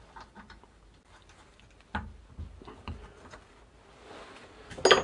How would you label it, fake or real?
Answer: real